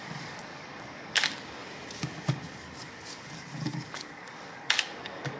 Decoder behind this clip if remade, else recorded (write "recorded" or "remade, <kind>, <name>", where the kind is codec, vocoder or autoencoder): remade, codec, DAC